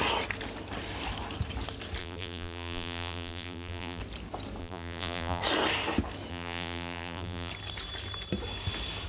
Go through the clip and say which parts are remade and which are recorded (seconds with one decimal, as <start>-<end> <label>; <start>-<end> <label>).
0.0-2.0 recorded; 2.0-4.0 remade; 4.0-4.6 recorded; 4.6-5.4 remade; 5.4-6.3 recorded; 6.3-7.5 remade; 7.5-9.1 recorded

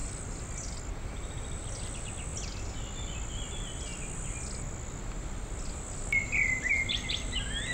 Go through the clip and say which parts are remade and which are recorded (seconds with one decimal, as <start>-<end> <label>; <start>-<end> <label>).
0.0-7.7 recorded

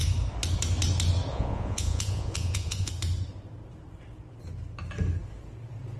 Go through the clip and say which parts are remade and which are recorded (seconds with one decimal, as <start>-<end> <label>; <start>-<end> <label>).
0.0-1.3 recorded; 1.3-2.9 remade; 2.9-6.0 recorded